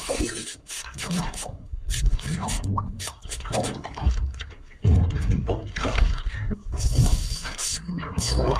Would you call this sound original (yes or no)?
no